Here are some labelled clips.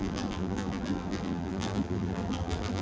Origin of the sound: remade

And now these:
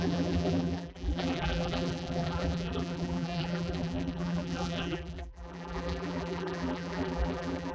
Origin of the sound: remade